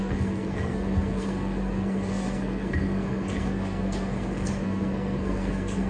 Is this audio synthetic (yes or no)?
yes